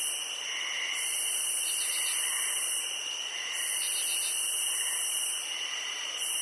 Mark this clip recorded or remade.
recorded